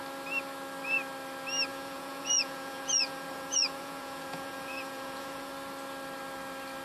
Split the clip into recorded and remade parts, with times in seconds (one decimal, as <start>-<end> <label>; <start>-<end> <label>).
0.0-1.7 recorded; 1.7-5.5 remade; 5.5-6.8 recorded